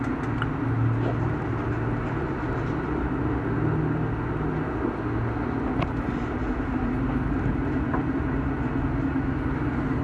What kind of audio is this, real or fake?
real